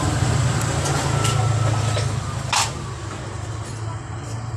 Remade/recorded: recorded